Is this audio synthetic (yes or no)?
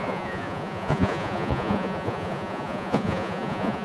yes